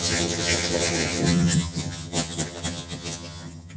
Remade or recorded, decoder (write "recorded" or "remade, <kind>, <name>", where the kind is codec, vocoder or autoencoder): remade, vocoder, HiFi-GAN